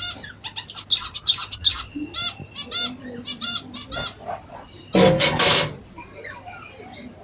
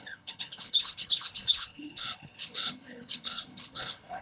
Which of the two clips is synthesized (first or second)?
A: second